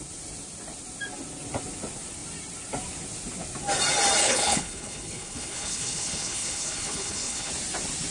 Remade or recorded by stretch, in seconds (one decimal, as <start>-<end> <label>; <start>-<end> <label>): 0.0-4.2 recorded; 4.2-7.5 remade; 7.5-8.1 recorded